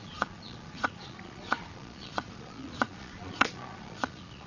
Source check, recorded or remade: remade